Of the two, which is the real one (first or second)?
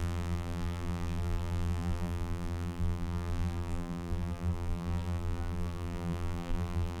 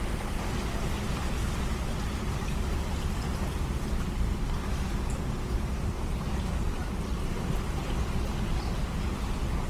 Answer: second